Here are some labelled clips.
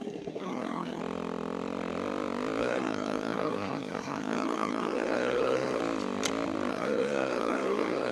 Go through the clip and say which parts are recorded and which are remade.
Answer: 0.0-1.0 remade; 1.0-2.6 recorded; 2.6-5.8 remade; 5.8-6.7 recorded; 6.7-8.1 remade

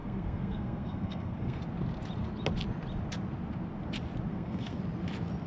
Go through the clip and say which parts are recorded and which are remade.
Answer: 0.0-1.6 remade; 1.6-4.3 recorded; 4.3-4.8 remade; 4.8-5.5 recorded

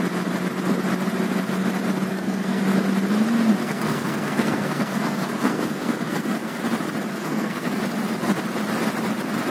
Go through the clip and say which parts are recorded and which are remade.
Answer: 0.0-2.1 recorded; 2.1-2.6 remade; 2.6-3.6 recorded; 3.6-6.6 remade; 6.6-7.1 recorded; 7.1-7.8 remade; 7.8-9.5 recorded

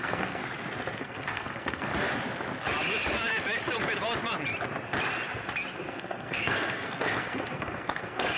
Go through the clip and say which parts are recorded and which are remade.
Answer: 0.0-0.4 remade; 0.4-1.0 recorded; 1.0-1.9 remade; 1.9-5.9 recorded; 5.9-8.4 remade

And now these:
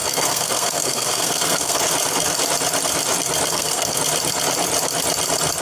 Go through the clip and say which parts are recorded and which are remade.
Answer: 0.0-1.8 remade; 1.8-3.5 recorded; 3.5-4.0 remade; 4.0-5.6 recorded

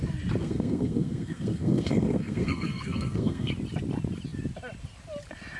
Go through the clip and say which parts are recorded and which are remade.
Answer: 0.0-0.4 recorded; 0.4-3.5 remade; 3.5-5.6 recorded

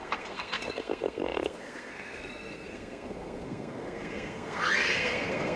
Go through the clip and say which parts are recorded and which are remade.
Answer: 0.0-5.6 remade